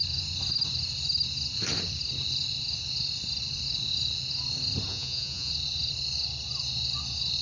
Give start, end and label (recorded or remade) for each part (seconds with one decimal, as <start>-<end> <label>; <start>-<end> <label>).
0.0-4.9 recorded; 4.9-5.5 remade; 5.5-7.4 recorded